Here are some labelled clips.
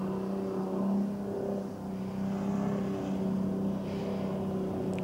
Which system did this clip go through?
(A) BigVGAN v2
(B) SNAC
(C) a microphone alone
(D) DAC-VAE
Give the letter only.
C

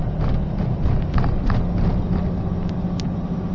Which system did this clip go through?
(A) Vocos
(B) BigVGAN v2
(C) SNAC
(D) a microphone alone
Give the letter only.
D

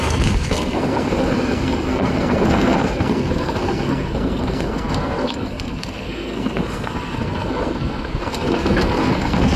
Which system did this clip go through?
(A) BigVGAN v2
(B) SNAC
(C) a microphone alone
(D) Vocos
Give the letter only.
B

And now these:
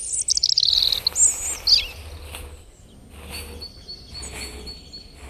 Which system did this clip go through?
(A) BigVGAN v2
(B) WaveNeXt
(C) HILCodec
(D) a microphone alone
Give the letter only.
D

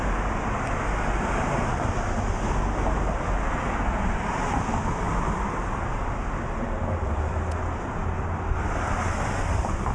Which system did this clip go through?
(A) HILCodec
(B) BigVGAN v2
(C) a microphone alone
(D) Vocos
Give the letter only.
C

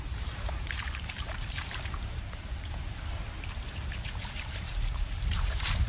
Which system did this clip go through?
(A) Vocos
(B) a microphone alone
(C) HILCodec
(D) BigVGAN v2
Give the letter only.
D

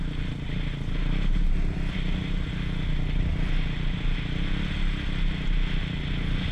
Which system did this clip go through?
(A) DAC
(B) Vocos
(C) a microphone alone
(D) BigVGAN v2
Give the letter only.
C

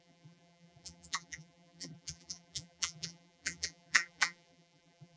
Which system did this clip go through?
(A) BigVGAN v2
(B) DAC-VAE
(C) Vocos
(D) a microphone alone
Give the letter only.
A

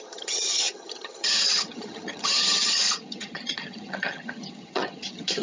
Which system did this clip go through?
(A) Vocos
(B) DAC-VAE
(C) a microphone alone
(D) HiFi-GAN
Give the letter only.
D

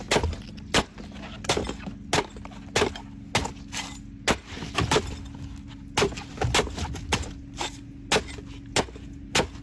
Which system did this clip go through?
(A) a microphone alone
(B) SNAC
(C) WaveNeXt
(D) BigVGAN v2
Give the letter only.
A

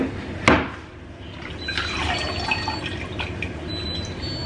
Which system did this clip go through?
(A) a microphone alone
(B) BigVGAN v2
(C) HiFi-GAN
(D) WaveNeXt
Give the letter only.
A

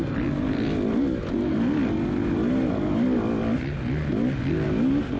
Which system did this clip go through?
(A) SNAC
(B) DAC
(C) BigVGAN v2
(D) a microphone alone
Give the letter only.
D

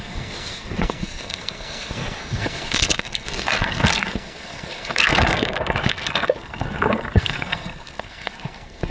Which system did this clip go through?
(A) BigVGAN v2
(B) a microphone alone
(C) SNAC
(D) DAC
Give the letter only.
C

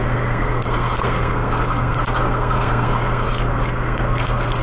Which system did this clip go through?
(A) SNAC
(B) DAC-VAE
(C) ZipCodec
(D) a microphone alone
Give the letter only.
A